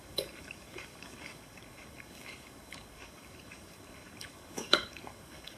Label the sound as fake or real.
fake